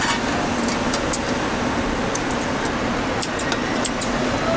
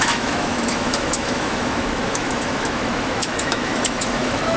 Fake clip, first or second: second